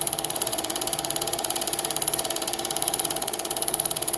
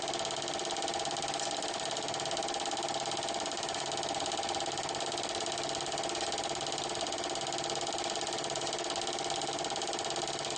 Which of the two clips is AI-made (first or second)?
first